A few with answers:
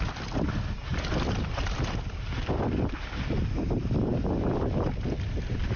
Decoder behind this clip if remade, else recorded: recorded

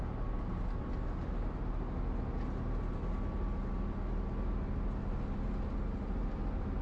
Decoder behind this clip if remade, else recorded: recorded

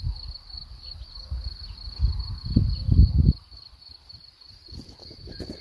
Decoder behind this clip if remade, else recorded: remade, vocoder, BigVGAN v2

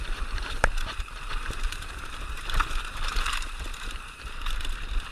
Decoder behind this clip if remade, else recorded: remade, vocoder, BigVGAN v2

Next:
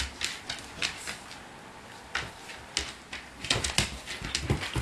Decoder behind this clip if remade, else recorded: recorded